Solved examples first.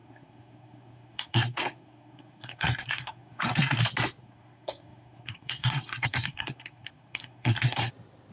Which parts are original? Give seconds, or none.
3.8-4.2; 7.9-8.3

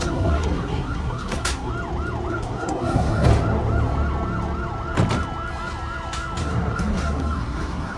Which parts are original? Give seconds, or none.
1.7-2.3; 3.3-6.4

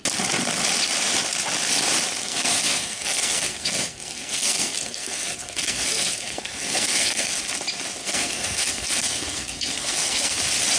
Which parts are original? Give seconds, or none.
0.0-2.2; 7.4-8.0; 10.4-10.8

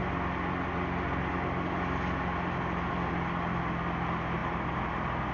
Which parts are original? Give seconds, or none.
0.0-5.3

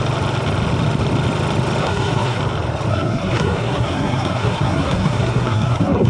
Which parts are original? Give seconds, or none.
0.0-1.8; 2.4-2.9

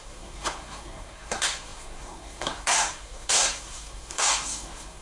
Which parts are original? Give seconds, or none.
none